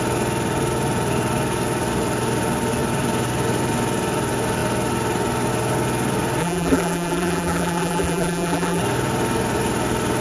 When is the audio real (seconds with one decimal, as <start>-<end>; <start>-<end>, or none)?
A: 0.0-6.4; 8.8-10.2